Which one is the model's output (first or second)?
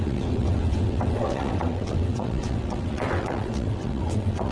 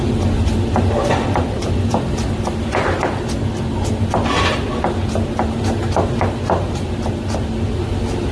first